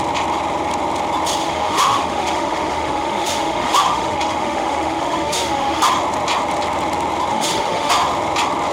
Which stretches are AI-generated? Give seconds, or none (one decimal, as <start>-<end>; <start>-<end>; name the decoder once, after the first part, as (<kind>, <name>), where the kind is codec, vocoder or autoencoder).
1.4-5.9 (autoencoder, DAC-VAE); 7.3-7.9